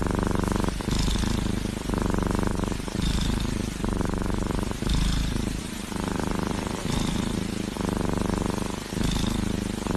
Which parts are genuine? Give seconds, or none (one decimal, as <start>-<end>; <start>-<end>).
0.0-2.5; 6.2-10.0